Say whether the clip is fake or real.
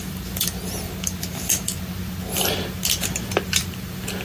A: real